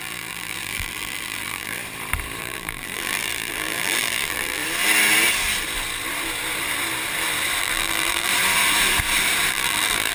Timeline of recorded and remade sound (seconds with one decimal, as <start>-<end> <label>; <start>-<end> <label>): 0.0-1.8 remade; 1.8-2.4 recorded; 2.4-4.6 remade; 4.6-7.6 recorded; 7.6-8.3 remade; 8.3-9.5 recorded; 9.5-10.1 remade